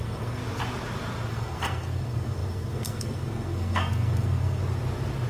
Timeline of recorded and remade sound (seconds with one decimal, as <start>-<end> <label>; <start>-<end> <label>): 0.0-0.4 remade; 0.4-1.3 recorded; 1.3-4.6 remade; 4.6-5.3 recorded

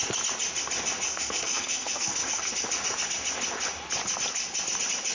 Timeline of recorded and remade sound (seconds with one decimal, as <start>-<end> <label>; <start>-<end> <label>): 0.0-1.1 recorded; 1.1-2.5 remade; 2.5-5.1 recorded